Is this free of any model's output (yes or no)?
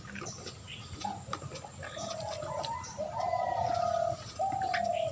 yes